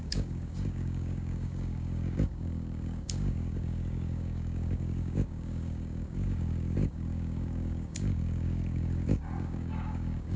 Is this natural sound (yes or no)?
no